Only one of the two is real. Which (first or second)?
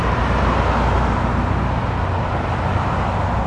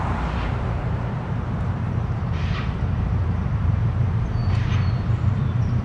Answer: first